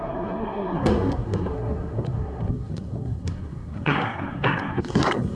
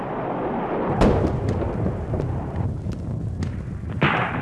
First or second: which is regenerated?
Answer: first